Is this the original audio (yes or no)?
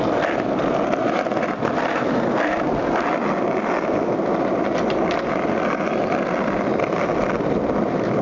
yes